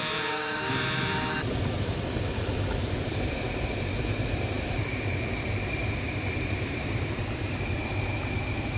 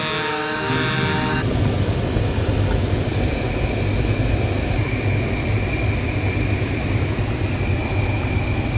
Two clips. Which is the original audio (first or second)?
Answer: second